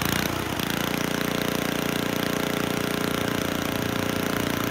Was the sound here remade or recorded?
recorded